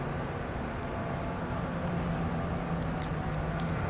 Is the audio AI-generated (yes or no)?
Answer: no